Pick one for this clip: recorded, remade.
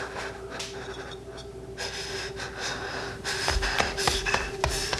recorded